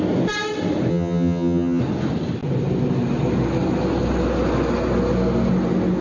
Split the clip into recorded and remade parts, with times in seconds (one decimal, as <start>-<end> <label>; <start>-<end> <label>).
0.0-0.9 recorded; 0.9-1.8 remade; 1.8-6.0 recorded